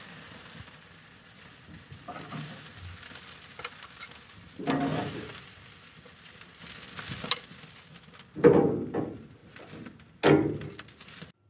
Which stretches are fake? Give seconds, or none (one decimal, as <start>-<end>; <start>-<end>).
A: none

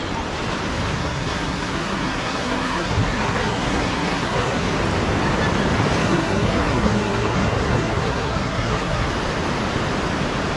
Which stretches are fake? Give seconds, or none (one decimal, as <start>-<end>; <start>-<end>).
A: 1.0-4.7; 6.0-9.1

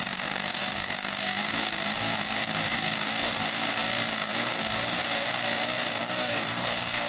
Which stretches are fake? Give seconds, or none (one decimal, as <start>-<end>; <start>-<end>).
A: 0.0-7.1

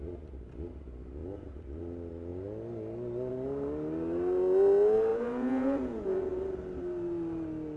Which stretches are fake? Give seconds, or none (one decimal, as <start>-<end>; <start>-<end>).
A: 5.1-6.3

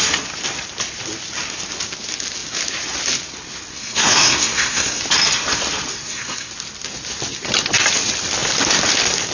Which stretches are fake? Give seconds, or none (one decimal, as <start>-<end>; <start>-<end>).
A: 3.7-5.0; 5.9-6.5

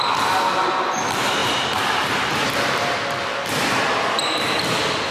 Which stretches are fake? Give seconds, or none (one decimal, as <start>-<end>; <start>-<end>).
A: 1.4-3.0